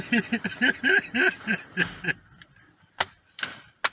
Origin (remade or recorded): recorded